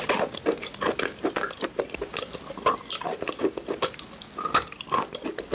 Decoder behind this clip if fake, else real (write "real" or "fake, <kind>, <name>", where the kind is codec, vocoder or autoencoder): real